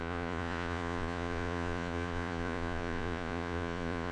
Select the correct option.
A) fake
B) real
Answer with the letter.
A